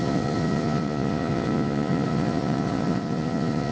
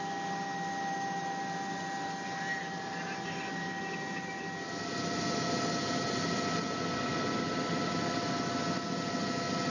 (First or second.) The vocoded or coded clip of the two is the first